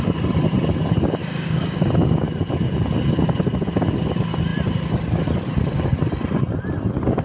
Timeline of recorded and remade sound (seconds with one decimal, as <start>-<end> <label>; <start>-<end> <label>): 0.0-1.2 recorded; 1.2-1.9 remade; 1.9-7.2 recorded